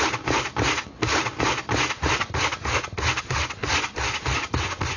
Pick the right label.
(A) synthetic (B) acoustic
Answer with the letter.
B